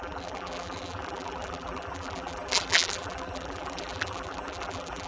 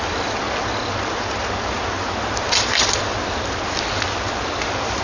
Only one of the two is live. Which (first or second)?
second